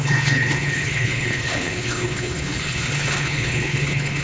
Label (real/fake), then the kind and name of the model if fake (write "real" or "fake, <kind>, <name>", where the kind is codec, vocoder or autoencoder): fake, codec, HILCodec